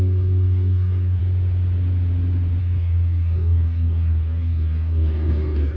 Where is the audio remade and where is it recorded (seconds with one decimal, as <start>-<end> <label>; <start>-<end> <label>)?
0.0-1.2 remade; 1.2-2.6 recorded; 2.6-5.8 remade